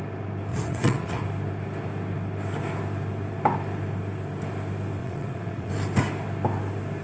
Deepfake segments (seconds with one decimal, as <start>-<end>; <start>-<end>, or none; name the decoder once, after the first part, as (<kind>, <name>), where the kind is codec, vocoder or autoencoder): 0.5-1.2 (vocoder, WaveNeXt); 5.0-5.7